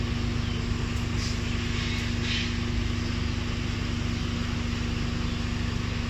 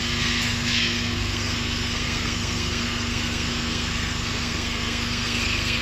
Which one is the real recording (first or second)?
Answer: first